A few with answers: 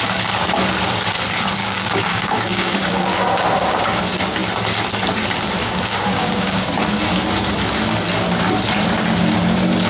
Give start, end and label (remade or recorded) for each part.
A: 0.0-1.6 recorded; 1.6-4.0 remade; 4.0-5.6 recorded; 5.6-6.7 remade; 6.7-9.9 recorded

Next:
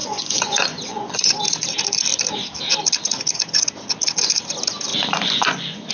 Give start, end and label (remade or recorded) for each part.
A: 0.0-1.3 remade; 1.3-4.9 recorded; 4.9-5.9 remade

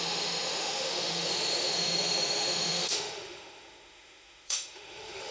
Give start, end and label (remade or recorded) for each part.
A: 0.0-5.3 remade

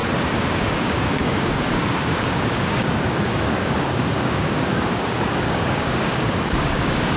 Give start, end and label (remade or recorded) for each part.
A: 0.0-0.5 recorded; 0.5-7.2 remade

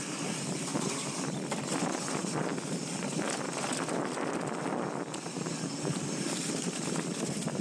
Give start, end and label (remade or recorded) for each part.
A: 0.0-7.6 recorded

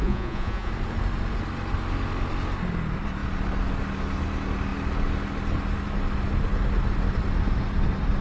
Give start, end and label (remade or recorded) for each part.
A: 0.0-0.7 remade; 0.7-8.2 recorded

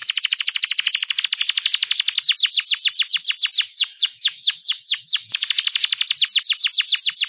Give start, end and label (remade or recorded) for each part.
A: 0.0-3.7 recorded; 3.7-5.5 remade; 5.5-7.3 recorded

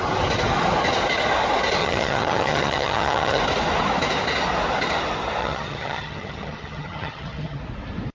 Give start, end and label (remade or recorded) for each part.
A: 0.0-1.8 recorded; 1.8-3.4 remade; 3.4-5.4 recorded; 5.4-7.6 remade; 7.6-8.1 recorded